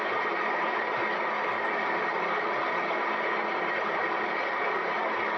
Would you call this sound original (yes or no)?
yes